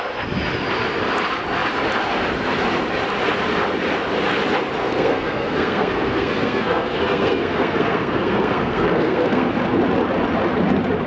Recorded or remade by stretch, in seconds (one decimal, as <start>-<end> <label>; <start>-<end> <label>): 0.0-4.8 recorded; 4.8-9.5 remade; 9.5-11.1 recorded